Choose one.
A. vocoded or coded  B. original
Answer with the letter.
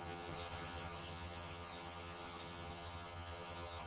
A